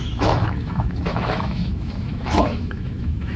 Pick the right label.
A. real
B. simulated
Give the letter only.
B